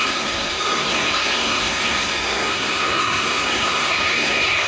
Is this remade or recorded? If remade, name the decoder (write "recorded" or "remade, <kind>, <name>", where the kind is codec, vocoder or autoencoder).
remade, codec, SNAC